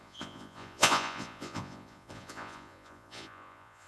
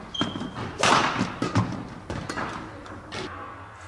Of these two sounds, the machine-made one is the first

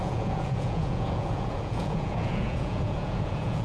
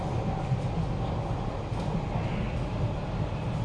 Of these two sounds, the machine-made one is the first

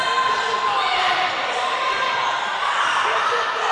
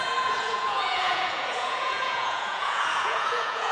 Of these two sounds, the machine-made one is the second